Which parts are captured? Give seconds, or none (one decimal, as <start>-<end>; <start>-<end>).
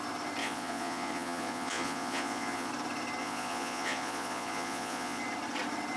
0.0-0.4; 2.7-3.2; 5.2-6.0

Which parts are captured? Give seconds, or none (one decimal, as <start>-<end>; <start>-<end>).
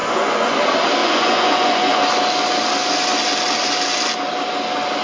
0.6-1.0; 2.0-5.0